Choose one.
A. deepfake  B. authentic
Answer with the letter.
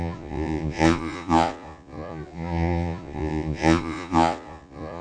A